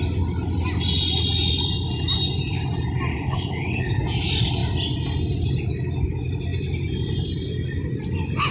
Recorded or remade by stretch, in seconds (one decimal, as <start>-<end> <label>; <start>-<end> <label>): 0.0-3.1 recorded; 3.1-4.0 remade; 4.0-8.5 recorded